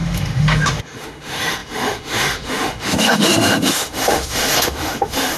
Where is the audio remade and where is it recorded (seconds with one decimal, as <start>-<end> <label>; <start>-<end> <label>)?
0.0-5.4 remade